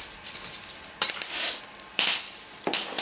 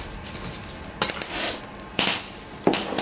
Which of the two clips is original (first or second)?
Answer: second